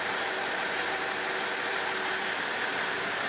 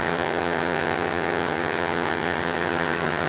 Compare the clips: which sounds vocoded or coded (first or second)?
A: second